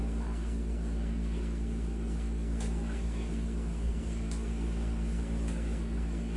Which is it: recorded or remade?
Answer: remade